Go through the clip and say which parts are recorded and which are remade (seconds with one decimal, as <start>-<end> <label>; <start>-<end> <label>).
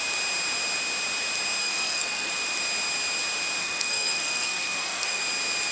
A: 0.0-1.6 recorded; 1.6-2.3 remade; 2.3-3.6 recorded; 3.6-5.2 remade; 5.2-5.7 recorded